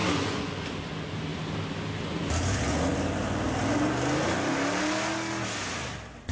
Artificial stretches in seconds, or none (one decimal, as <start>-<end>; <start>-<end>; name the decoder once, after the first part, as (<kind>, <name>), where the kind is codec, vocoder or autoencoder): 0.0-0.6 (vocoder, Vocos)